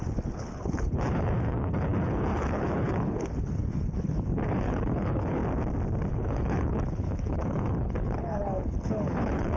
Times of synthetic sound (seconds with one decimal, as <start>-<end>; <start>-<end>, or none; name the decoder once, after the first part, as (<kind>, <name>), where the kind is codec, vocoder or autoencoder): 0.0-5.4 (codec, HILCodec); 6.1-9.6